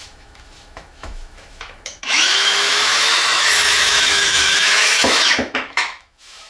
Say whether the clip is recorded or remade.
remade